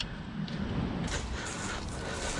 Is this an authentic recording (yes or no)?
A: yes